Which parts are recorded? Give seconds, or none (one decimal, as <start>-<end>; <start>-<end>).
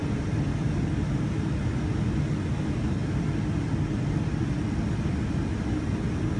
0.0-6.4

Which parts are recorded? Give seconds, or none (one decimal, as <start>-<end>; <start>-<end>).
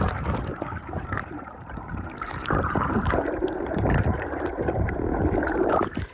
0.0-0.8; 4.5-6.1